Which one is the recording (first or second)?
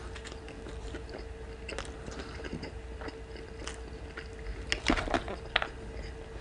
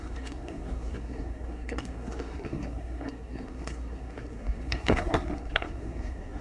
first